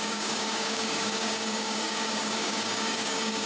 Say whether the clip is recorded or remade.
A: remade